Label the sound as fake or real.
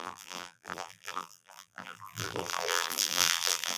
fake